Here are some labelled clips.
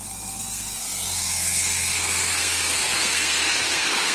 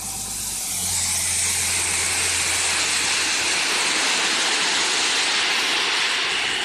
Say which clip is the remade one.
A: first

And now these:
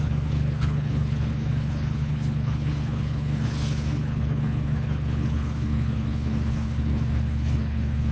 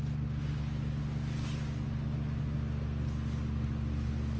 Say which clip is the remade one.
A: first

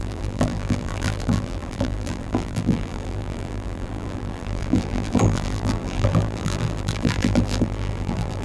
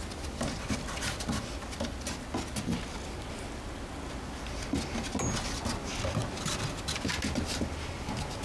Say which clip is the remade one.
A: first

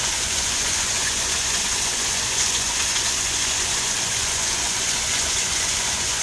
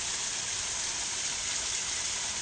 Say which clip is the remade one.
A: first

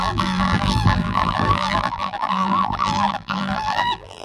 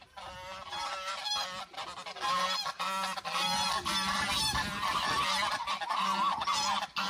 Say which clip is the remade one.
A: first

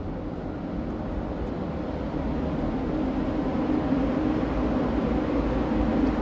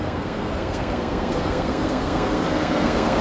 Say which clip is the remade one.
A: second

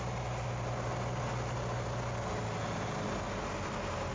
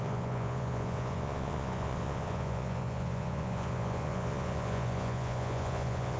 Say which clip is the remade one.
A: second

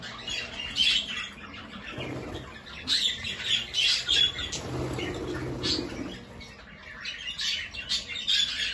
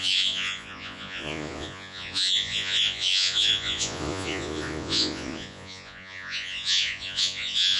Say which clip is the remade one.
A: second